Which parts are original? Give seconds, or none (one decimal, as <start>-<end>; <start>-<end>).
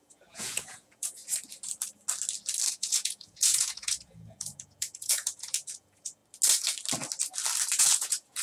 1.2-2.7; 6.2-7.8